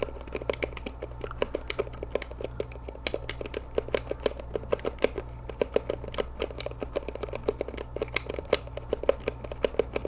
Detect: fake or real real